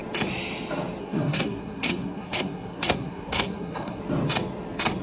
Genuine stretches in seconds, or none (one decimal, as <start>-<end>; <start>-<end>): 0.0-1.0; 4.0-5.0

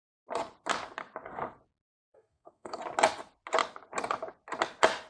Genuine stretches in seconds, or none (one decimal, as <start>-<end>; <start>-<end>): 0.0-2.0; 2.8-5.1

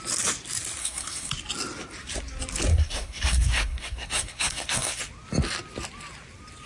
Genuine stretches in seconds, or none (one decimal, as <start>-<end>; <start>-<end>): 0.0-0.8; 1.3-2.7; 5.0-6.7

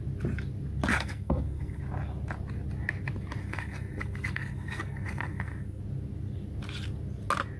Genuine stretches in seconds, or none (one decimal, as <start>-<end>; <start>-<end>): 0.0-0.9; 1.8-3.4; 5.8-7.6

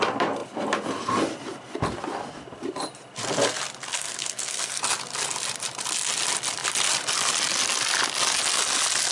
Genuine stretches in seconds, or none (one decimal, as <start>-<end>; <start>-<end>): 0.0-3.9; 4.8-9.1

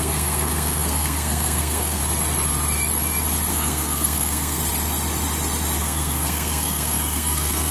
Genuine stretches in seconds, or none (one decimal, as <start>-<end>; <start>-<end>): 2.0-3.5; 4.6-5.8